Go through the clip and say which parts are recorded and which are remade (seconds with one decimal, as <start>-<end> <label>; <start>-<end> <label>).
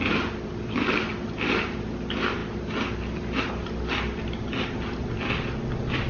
0.0-6.1 recorded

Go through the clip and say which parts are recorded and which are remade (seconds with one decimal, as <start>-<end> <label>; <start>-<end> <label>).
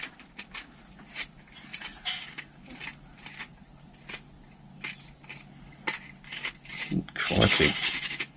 0.0-1.7 remade; 1.7-2.4 recorded; 2.4-5.9 remade; 5.9-6.7 recorded; 6.7-8.4 remade